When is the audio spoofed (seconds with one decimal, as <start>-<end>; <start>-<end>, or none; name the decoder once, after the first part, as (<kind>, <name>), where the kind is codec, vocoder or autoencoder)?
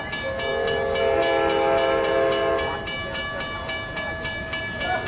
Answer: none